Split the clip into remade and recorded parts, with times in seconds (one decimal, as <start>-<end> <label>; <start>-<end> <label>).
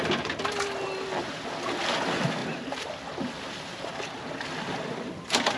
0.0-5.6 recorded